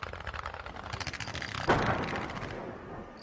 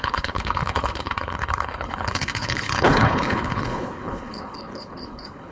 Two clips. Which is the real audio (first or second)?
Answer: first